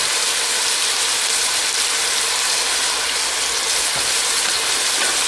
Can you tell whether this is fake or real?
real